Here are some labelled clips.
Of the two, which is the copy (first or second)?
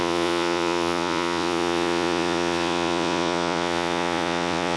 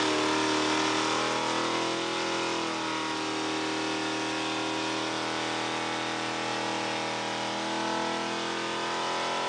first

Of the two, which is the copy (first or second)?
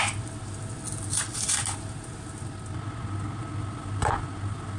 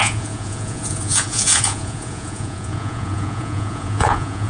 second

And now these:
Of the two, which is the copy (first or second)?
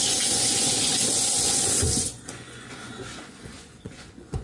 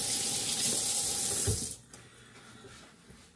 first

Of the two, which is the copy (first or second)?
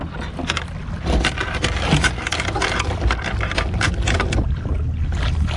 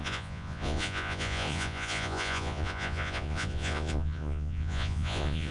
second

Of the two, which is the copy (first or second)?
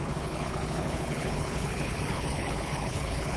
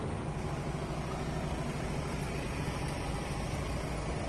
first